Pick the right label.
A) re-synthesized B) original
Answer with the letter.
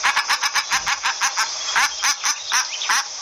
B